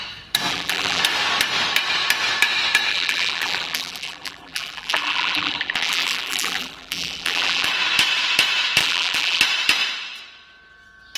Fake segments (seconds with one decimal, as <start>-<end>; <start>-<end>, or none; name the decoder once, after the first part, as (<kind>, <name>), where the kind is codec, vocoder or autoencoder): 0.5-1.0 (vocoder, BigVGAN v2); 2.9-7.7; 8.8-9.4